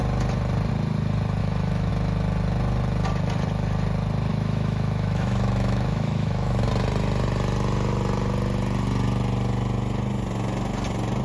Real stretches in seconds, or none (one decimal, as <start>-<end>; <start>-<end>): 0.0-1.4; 1.9-4.3; 6.7-11.2